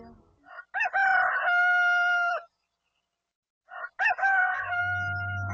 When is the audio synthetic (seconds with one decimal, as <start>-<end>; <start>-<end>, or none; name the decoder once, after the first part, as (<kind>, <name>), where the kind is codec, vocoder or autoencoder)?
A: 4.2-4.8 (codec, SNAC)